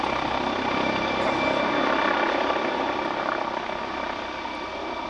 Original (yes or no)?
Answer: yes